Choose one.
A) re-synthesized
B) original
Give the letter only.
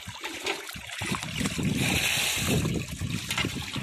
B